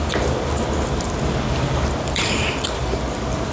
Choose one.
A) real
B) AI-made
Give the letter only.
A